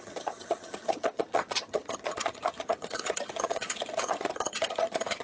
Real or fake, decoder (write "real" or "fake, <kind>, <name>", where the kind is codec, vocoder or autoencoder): fake, vocoder, HiFi-GAN